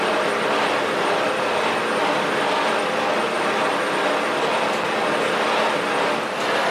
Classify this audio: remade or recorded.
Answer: recorded